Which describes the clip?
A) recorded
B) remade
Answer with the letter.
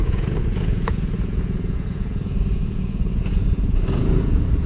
B